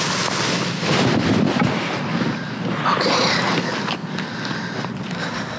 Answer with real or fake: real